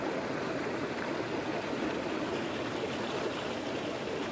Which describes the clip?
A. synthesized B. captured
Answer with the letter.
B